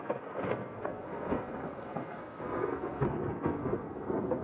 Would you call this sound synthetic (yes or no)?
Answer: yes